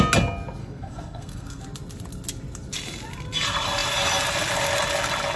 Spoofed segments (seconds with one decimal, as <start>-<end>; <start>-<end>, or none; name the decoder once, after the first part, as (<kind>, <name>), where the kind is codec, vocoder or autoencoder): 0.6-1.6 (codec, SNAC)